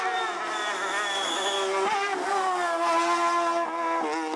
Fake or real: real